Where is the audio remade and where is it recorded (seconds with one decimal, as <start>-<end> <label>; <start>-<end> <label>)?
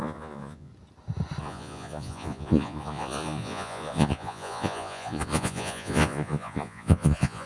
0.0-0.7 remade; 0.7-1.4 recorded; 1.4-7.5 remade